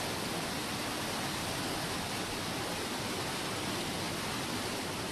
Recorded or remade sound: recorded